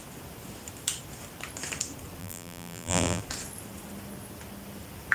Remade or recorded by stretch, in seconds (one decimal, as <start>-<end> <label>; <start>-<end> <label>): 0.0-2.2 recorded; 2.2-3.2 remade; 3.2-5.1 recorded